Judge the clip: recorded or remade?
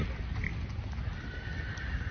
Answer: recorded